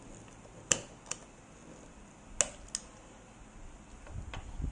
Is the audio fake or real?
real